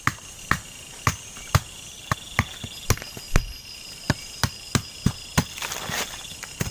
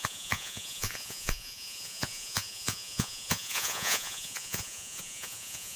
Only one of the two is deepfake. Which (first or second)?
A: second